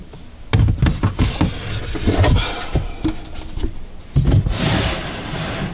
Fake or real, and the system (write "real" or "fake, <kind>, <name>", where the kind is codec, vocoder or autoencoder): real